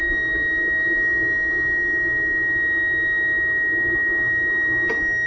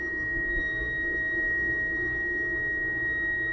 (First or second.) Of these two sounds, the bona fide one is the first